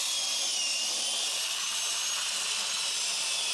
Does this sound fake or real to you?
real